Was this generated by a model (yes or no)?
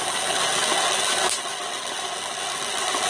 no